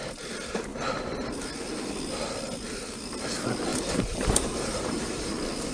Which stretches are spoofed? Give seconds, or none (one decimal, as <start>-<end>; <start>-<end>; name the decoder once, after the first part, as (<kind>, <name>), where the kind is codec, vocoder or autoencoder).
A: 3.7-5.3 (vocoder, BigVGAN v2)